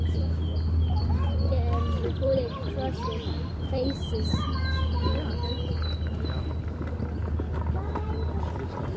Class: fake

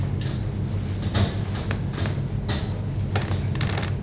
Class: real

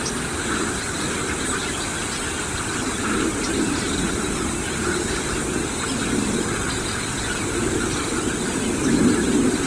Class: real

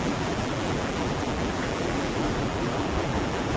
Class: fake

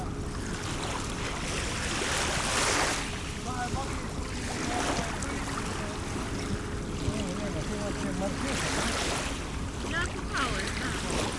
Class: real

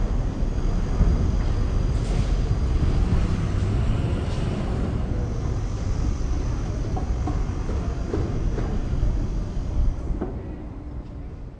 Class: real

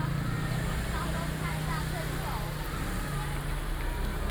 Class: real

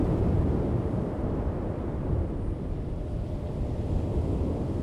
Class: real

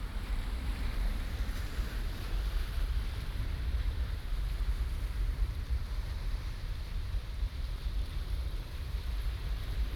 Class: fake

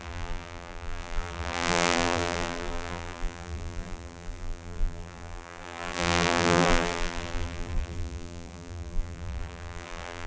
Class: fake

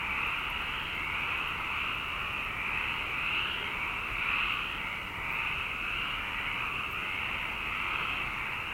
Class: real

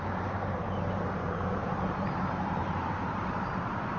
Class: fake